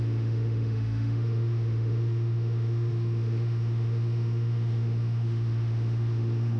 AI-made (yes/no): yes